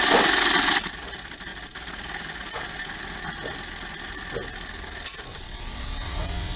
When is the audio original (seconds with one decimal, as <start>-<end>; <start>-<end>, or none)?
0.0-5.3